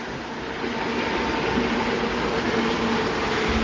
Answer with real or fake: real